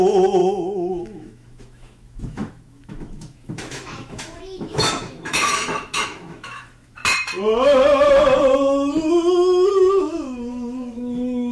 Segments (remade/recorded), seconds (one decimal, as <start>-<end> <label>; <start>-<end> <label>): 0.0-7.0 remade; 7.0-9.1 recorded; 9.1-11.5 remade